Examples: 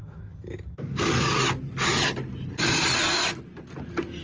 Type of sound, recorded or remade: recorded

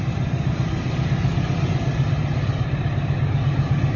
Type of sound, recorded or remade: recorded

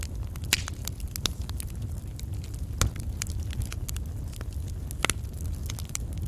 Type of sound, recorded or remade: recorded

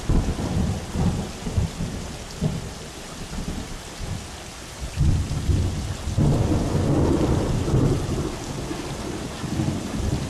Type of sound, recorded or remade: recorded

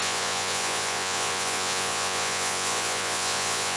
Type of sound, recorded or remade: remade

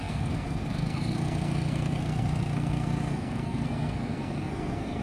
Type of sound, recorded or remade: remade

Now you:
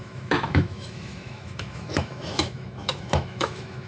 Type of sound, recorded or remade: remade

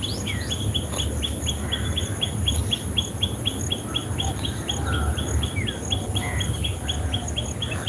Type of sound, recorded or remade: recorded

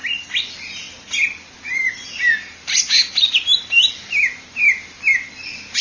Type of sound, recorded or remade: recorded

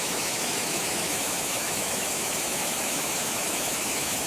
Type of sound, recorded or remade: remade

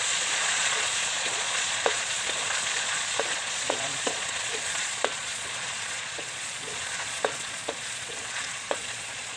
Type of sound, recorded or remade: remade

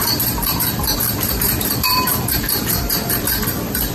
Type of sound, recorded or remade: remade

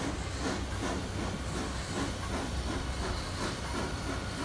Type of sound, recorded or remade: recorded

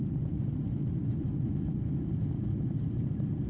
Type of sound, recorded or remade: recorded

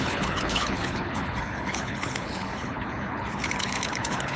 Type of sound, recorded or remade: remade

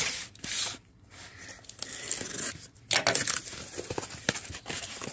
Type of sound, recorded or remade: recorded